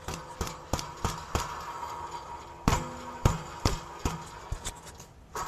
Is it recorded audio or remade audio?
recorded